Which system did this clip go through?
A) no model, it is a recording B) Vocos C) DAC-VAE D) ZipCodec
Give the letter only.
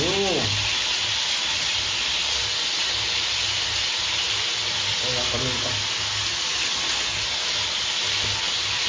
A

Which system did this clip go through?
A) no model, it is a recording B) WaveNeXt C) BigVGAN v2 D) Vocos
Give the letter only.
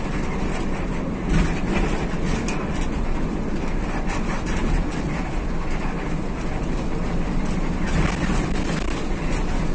A